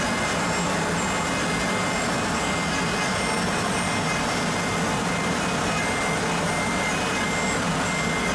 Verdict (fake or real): real